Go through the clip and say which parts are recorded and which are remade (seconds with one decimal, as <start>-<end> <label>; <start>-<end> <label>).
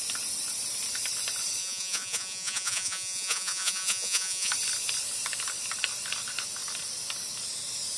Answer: 0.0-1.6 recorded; 1.6-4.5 remade; 4.5-8.0 recorded